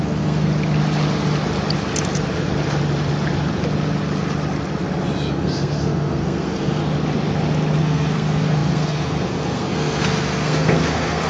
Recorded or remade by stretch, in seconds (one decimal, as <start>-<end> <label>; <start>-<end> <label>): 0.0-0.5 remade; 0.5-5.3 recorded; 5.3-6.8 remade; 6.8-7.8 recorded; 7.8-11.3 remade